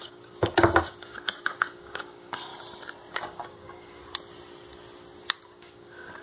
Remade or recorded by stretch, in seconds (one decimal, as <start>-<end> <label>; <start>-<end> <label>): 0.0-2.5 remade; 2.5-3.1 recorded; 3.1-4.0 remade; 4.0-5.4 recorded; 5.4-6.2 remade